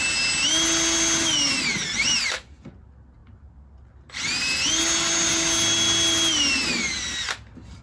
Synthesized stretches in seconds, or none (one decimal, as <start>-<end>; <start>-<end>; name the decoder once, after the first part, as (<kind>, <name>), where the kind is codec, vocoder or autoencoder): none